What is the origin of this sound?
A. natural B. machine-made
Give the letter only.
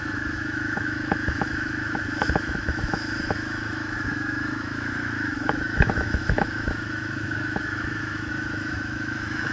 B